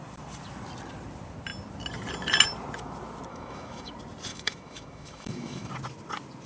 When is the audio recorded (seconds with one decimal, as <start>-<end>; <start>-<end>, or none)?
0.0-3.3; 3.9-4.3; 5.7-6.5

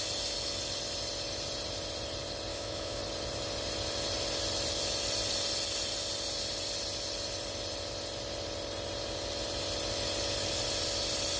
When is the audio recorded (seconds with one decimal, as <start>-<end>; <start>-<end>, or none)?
0.0-2.5; 3.0-11.4

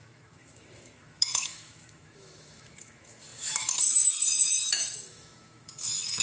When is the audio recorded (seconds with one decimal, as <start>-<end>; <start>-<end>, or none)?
none

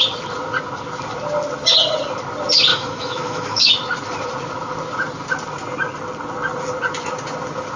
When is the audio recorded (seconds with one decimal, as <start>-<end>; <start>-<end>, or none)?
0.0-2.7; 3.7-7.8

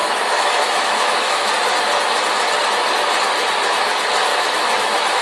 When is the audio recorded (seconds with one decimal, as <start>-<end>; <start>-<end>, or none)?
1.5-4.3

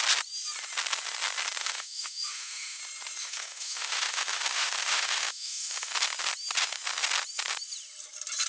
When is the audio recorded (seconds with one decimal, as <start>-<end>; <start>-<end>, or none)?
0.0-1.6; 2.8-3.2; 5.9-8.5